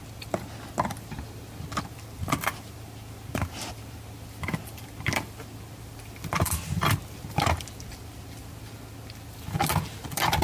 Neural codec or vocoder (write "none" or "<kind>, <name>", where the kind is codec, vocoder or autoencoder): none